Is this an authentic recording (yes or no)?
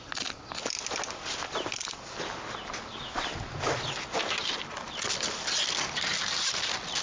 yes